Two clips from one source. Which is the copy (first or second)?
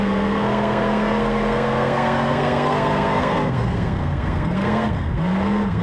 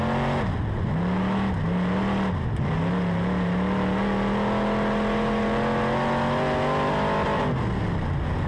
first